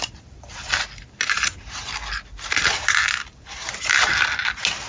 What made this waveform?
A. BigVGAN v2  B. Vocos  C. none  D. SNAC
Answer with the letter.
C